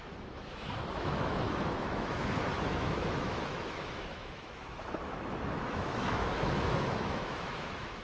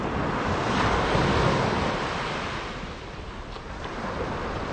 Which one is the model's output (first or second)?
first